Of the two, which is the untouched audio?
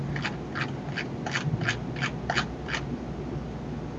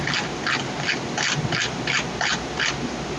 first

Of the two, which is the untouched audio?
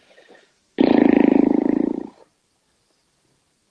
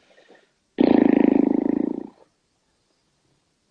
second